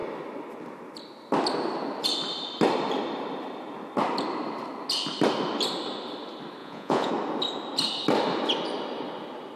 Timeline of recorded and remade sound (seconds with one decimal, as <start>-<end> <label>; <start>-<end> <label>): 0.0-6.6 recorded; 6.6-7.1 remade; 7.1-9.6 recorded